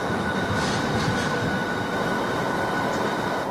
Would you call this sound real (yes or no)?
yes